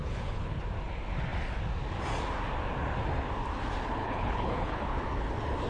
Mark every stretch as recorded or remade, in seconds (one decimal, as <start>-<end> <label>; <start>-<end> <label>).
0.0-0.6 remade; 0.6-4.0 recorded; 4.0-4.9 remade; 4.9-5.7 recorded